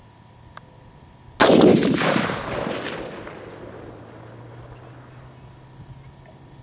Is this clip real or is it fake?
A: real